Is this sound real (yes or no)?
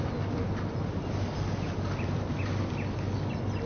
yes